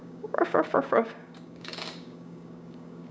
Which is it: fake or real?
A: fake